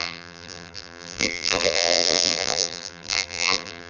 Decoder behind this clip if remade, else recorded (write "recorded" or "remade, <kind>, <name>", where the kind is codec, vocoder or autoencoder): remade, vocoder, BigVGAN v2